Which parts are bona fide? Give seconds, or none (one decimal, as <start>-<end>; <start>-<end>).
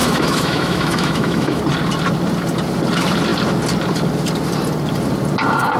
1.6-5.8